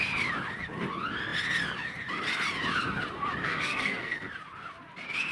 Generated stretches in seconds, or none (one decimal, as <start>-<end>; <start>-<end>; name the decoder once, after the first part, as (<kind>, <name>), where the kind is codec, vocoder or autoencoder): 3.4-4.3 (codec, SNAC)